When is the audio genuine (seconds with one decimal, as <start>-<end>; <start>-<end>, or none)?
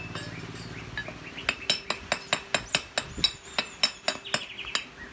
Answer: 0.0-5.1